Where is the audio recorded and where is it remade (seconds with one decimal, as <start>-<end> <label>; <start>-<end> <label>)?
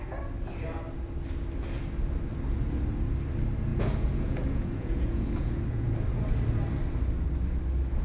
0.0-3.7 recorded; 3.7-5.9 remade; 5.9-8.0 recorded